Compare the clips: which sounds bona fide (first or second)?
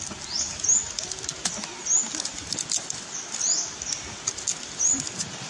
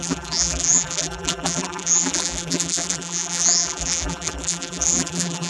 first